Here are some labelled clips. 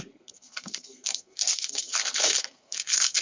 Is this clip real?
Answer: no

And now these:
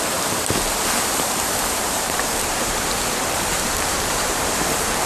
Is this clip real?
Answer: no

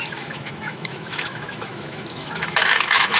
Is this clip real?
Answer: no